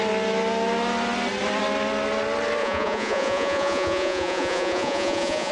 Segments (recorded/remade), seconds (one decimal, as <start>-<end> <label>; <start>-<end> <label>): 0.0-2.6 recorded; 2.6-5.5 remade